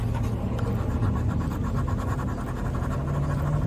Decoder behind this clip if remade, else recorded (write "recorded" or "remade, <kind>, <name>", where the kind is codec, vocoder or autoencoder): recorded